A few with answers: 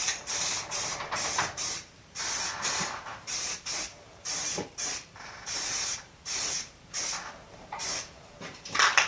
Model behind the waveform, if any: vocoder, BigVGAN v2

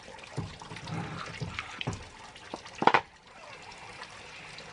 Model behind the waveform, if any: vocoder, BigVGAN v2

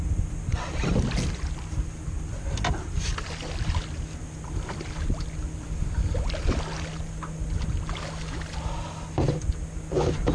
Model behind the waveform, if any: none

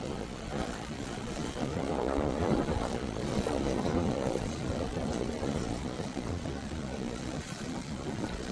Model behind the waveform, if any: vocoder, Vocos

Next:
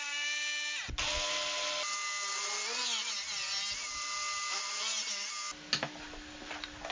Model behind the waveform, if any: none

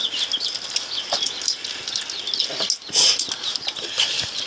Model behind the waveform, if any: none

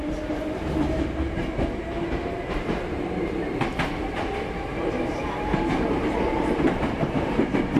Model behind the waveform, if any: vocoder, BigVGAN v2